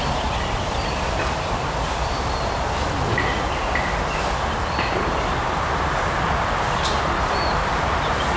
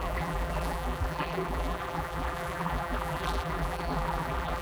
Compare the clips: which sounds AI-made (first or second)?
second